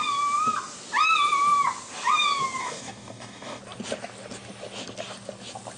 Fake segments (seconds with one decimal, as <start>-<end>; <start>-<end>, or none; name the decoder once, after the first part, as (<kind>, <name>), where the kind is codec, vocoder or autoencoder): 2.6-3.6 (codec, DAC)